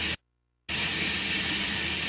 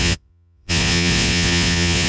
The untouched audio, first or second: first